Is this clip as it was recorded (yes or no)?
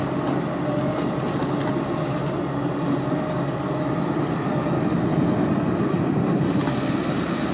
yes